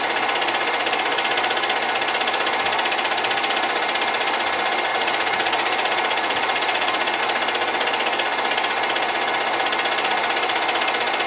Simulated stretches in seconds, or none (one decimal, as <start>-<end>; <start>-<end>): 4.9-7.2

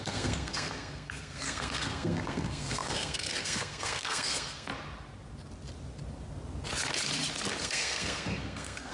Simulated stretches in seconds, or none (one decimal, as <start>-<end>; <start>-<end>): 0.0-4.7; 7.6-8.9

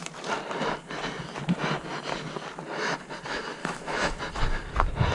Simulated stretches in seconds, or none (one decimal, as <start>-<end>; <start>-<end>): 3.6-4.2

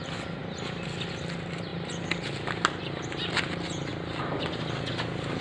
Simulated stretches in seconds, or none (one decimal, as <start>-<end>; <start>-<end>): none

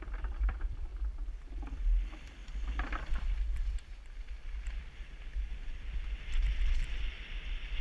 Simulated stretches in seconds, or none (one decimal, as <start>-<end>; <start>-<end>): 0.0-0.9; 1.5-2.4; 3.5-7.8